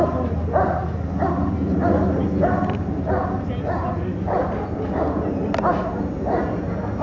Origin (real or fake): real